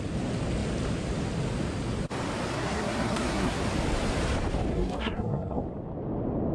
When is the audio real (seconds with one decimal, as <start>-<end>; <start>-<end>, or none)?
0.0-2.5; 3.6-4.7; 5.6-6.5